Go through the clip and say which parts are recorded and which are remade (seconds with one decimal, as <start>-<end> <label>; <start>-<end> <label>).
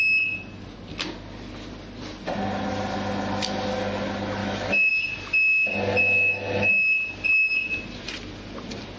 0.0-4.4 recorded; 4.4-4.9 remade; 4.9-6.0 recorded; 6.0-6.7 remade; 6.7-9.0 recorded